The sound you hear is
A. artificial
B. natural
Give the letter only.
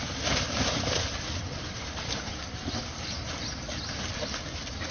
B